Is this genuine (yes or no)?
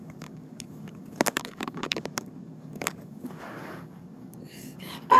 no